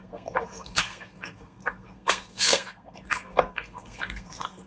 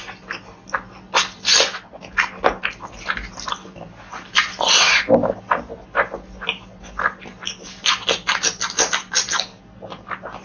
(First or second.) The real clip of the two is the second